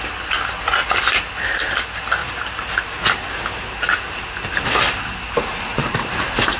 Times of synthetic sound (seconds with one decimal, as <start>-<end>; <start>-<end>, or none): 2.2-6.6